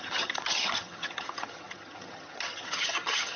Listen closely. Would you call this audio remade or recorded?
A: remade